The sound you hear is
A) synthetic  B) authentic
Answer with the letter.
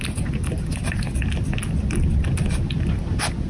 B